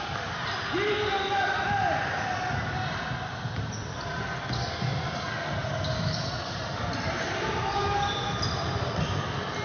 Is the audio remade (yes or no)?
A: no